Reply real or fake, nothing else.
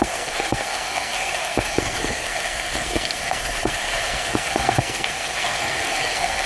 fake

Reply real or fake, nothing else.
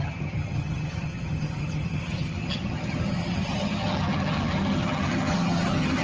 fake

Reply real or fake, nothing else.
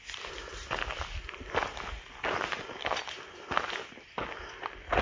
real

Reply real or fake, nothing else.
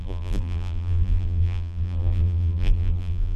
fake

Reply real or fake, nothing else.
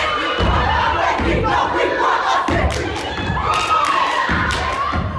real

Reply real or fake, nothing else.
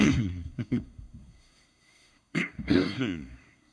fake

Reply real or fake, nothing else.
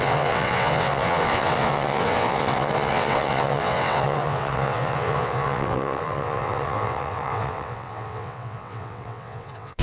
fake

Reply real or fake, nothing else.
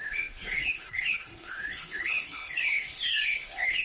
fake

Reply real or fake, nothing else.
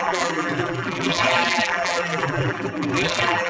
fake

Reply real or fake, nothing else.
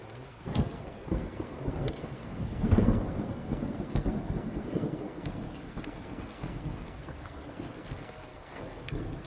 fake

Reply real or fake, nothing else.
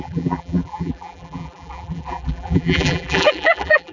fake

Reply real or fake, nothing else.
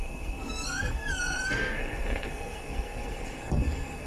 fake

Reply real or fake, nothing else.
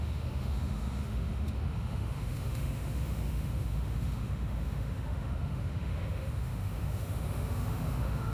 fake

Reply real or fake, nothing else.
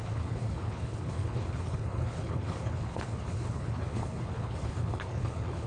fake